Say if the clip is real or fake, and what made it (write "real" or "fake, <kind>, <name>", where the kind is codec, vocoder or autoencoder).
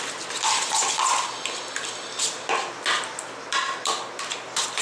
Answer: real